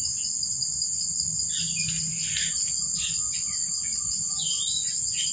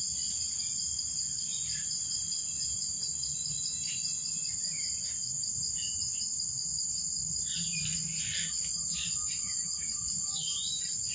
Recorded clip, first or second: first